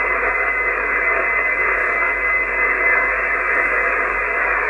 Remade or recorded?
remade